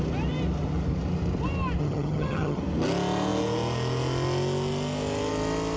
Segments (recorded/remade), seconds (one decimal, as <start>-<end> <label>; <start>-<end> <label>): 0.0-1.8 recorded; 1.8-2.6 remade; 2.6-5.8 recorded